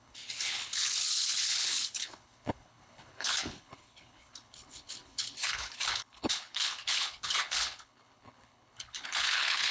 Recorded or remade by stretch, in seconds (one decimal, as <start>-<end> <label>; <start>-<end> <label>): 0.0-9.7 remade